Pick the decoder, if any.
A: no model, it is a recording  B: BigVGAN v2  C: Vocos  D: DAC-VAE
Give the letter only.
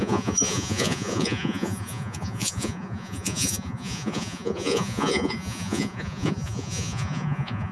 C